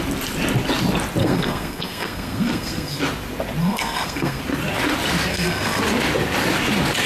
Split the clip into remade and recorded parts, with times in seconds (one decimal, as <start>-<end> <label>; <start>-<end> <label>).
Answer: 0.0-1.2 recorded; 1.2-3.0 remade; 3.0-3.6 recorded; 3.6-4.4 remade; 4.4-5.3 recorded; 5.3-5.8 remade; 5.8-7.1 recorded

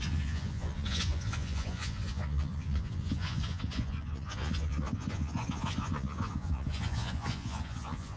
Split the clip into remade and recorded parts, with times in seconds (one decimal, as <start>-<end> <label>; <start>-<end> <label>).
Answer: 0.0-8.2 remade

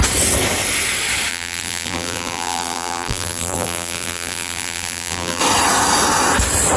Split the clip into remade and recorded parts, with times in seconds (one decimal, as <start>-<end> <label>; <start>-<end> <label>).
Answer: 0.0-1.3 recorded; 1.3-5.4 remade; 5.4-6.8 recorded

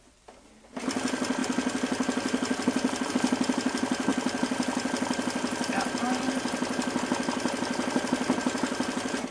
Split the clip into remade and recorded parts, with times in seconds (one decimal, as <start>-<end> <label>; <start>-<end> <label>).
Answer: 0.0-9.3 recorded

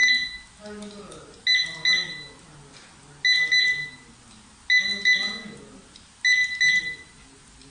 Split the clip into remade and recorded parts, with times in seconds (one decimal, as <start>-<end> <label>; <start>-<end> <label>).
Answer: 0.0-7.7 recorded

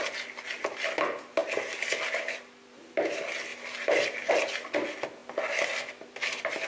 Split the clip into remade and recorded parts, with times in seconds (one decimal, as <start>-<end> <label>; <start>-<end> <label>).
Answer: 0.0-3.5 recorded; 3.5-4.3 remade; 4.3-6.7 recorded

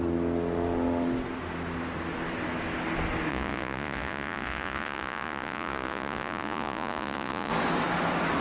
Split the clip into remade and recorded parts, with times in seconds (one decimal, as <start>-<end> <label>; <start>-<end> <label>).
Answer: 0.0-3.3 recorded; 3.3-7.5 remade; 7.5-8.4 recorded

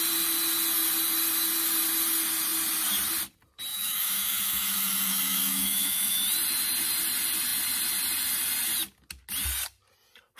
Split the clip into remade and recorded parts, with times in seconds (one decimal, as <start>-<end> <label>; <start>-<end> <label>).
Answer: 0.0-3.7 recorded; 3.7-6.2 remade; 6.2-10.4 recorded